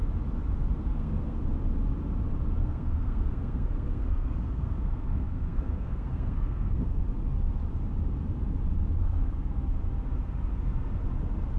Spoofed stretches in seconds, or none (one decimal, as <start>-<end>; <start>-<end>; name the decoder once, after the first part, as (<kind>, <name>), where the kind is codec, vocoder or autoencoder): 0.8-1.4 (codec, SNAC); 2.6-7.0; 9.0-9.5